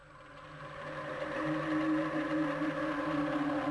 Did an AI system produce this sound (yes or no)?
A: no